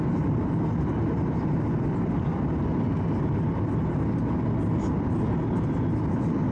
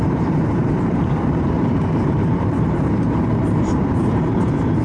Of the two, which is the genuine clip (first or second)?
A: first